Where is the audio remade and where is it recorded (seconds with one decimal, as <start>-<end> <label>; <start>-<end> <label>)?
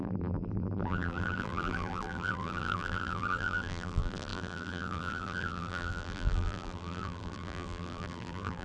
0.0-8.6 remade